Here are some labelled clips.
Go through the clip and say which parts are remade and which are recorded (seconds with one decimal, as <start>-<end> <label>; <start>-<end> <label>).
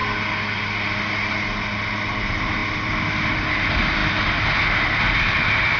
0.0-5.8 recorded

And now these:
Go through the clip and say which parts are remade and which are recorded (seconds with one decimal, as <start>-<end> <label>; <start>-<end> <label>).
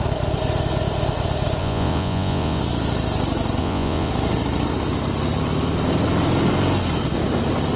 0.0-1.6 recorded; 1.6-2.6 remade; 2.6-3.6 recorded; 3.6-4.1 remade; 4.1-7.8 recorded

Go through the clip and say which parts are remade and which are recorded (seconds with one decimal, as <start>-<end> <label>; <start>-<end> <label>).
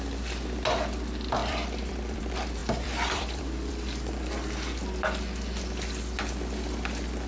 0.0-1.4 recorded; 1.4-2.2 remade; 2.2-2.6 recorded; 2.6-3.7 remade; 3.7-7.3 recorded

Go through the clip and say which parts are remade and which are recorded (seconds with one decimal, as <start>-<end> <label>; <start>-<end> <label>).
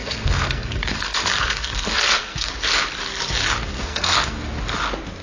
0.0-2.5 remade; 2.5-3.7 recorded; 3.7-4.4 remade; 4.4-5.2 recorded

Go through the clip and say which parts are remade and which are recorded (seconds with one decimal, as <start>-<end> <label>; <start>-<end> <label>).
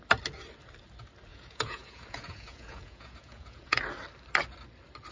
0.0-1.3 recorded; 1.3-3.8 remade; 3.8-5.1 recorded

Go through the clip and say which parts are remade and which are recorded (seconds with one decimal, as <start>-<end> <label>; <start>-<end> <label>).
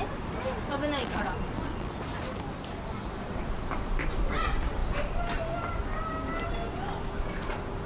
0.0-1.0 recorded; 1.0-2.0 remade; 2.0-7.9 recorded